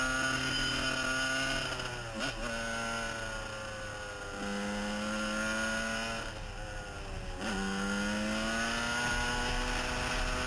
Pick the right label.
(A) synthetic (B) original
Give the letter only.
B